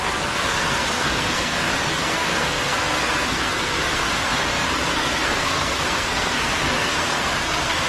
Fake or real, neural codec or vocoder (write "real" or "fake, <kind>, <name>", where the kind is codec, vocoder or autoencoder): fake, codec, SNAC